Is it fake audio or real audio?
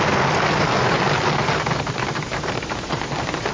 real